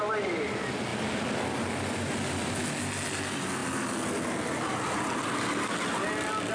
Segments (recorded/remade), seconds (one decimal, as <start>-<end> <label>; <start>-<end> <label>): 0.0-6.5 recorded